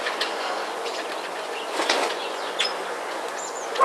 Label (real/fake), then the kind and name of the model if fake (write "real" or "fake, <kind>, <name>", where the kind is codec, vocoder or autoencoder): fake, vocoder, Vocos